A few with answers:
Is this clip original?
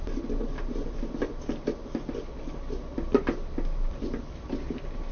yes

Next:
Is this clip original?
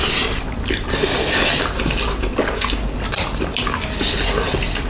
yes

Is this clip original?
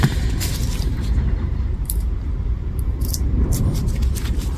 no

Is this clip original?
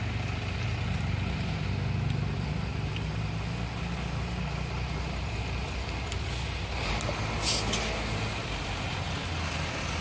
yes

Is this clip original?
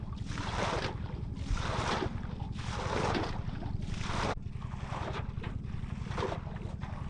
yes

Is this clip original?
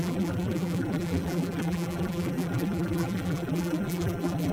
no